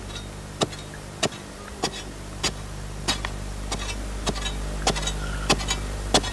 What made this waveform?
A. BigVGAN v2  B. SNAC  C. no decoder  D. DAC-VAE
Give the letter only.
C